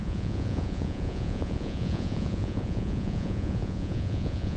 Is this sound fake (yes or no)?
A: yes